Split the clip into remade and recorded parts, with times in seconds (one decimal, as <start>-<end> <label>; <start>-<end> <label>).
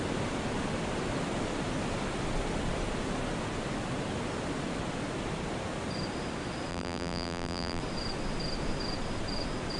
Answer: 0.0-6.7 recorded; 6.7-7.8 remade; 7.8-9.8 recorded